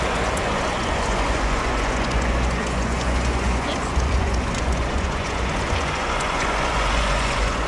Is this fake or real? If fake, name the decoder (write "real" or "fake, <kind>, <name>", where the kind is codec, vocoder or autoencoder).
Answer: fake, vocoder, Vocos